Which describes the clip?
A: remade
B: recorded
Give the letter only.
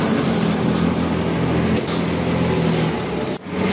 B